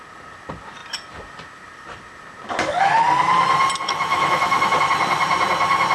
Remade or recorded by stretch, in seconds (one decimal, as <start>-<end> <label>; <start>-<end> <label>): 0.0-4.1 recorded; 4.1-4.8 remade; 4.8-5.9 recorded